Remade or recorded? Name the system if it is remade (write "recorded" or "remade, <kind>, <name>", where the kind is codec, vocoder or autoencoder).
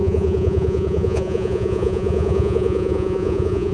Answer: remade, vocoder, Vocos